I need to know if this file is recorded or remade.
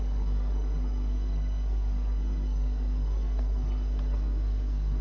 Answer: remade